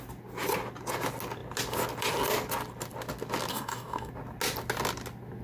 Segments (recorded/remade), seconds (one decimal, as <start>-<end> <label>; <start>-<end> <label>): 0.0-3.5 recorded; 3.5-4.1 remade; 4.1-5.4 recorded